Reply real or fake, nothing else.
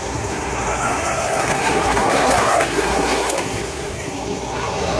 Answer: fake